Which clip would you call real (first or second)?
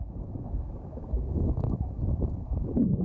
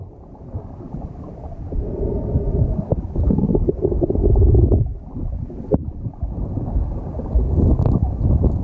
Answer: second